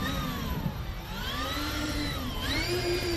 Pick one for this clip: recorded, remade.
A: remade